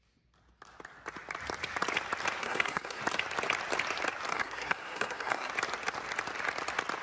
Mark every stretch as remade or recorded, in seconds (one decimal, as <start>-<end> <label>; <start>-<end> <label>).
0.0-2.4 recorded; 2.4-3.0 remade; 3.0-4.3 recorded; 4.3-5.5 remade; 5.5-7.0 recorded

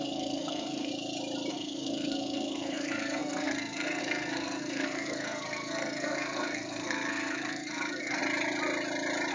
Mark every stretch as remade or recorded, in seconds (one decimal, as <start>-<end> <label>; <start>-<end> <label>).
0.0-0.9 remade; 0.9-1.5 recorded; 1.5-8.2 remade; 8.2-9.3 recorded

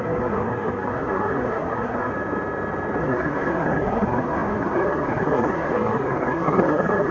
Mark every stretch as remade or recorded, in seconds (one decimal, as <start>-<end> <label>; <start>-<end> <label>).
0.0-2.1 remade; 2.1-3.0 recorded; 3.0-7.1 remade

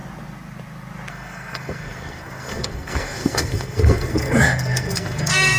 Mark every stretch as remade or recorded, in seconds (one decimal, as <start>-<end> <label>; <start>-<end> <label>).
0.0-1.1 recorded; 1.1-5.6 remade

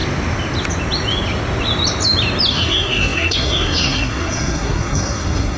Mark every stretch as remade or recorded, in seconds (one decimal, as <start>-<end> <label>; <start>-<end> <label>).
0.0-2.5 recorded; 2.5-5.6 remade

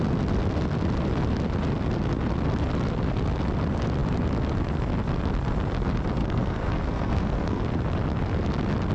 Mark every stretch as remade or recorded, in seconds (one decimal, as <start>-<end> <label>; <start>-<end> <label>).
0.0-6.2 recorded; 6.2-7.6 remade; 7.6-8.9 recorded

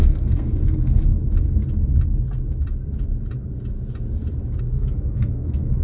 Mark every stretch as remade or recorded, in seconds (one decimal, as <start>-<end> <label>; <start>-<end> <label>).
0.0-1.1 remade; 1.1-4.6 recorded; 4.6-5.8 remade

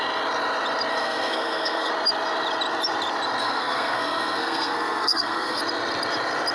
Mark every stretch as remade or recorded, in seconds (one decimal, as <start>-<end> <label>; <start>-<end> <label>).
0.0-0.9 recorded; 0.9-1.9 remade; 1.9-3.4 recorded; 3.4-5.6 remade; 5.6-6.5 recorded